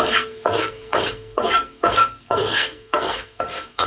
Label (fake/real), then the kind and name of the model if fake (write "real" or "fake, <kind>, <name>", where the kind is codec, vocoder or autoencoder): fake, codec, SNAC